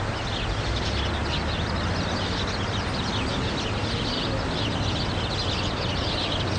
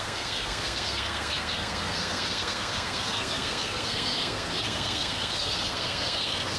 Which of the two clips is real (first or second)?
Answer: first